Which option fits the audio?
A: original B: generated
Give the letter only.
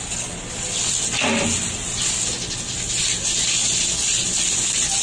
A